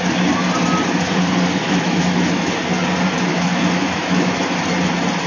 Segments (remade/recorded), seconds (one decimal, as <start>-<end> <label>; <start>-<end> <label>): 0.0-1.6 recorded; 1.6-2.5 remade; 2.5-3.3 recorded; 3.3-4.3 remade; 4.3-5.3 recorded